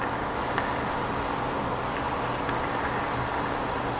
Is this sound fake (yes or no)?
no